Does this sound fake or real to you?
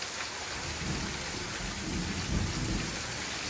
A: real